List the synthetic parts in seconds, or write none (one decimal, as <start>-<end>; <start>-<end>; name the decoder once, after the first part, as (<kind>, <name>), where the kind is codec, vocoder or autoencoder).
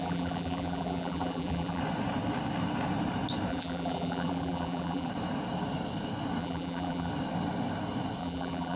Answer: 0.0-1.8 (vocoder, BigVGAN v2); 3.5-5.1; 6.4-7.1; 8.2-8.8